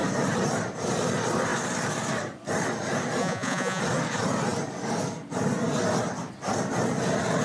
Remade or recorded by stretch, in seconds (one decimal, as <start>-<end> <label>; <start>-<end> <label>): 0.0-3.2 recorded; 3.2-3.8 remade; 3.8-7.4 recorded